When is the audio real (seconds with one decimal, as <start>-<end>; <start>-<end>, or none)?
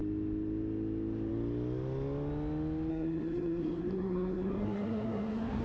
0.0-2.9